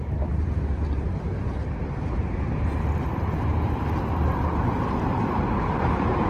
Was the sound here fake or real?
fake